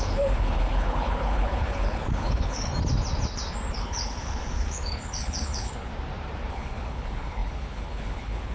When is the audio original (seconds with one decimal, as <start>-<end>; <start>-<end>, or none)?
2.7-3.7; 5.9-6.5